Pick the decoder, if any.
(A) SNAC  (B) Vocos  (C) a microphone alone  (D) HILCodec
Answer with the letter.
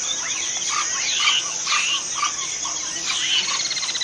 C